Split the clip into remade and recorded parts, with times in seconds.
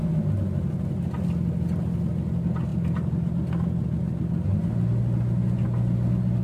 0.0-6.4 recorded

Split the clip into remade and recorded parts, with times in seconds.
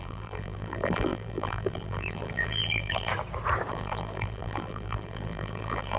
0.0-3.1 remade; 3.1-3.7 recorded; 3.7-6.0 remade